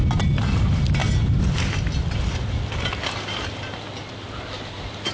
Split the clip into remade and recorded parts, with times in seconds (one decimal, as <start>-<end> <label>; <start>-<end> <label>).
0.0-5.1 recorded